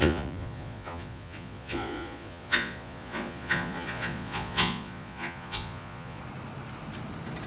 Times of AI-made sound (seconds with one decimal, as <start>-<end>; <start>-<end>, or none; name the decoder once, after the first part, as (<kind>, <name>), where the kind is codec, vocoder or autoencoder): 0.0-6.2 (vocoder, Vocos)